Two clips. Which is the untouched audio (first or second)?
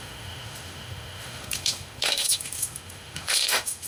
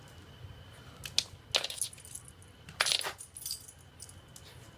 second